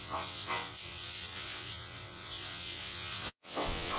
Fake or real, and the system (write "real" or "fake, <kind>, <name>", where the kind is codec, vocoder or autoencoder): fake, vocoder, WaveNeXt